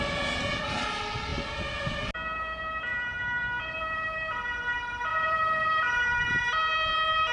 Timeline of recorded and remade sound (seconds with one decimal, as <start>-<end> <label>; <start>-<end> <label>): 0.0-5.1 recorded; 5.1-6.0 remade; 6.0-7.3 recorded